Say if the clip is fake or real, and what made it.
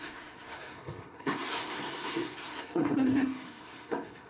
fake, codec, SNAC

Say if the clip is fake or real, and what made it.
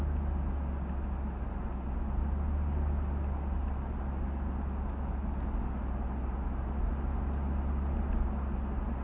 real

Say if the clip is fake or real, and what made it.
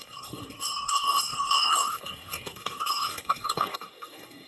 fake, codec, SNAC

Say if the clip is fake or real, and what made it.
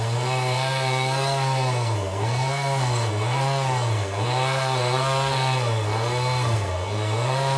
fake, codec, SNAC